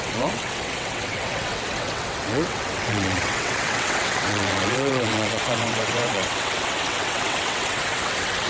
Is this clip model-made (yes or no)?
yes